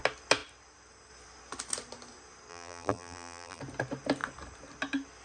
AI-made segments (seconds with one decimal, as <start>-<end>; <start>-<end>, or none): 2.5-3.6